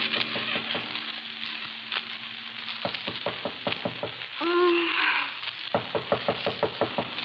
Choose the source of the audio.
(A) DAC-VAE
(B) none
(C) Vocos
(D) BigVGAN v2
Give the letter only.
B